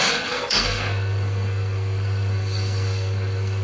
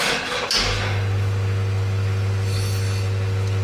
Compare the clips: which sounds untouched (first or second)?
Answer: second